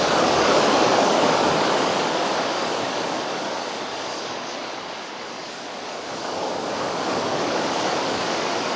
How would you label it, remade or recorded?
remade